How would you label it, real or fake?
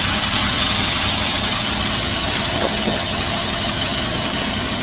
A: fake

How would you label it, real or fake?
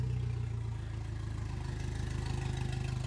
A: real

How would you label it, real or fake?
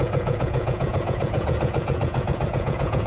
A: fake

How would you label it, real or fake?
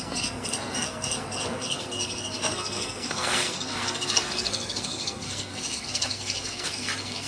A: fake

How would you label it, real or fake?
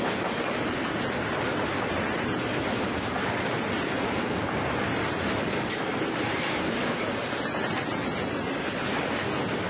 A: real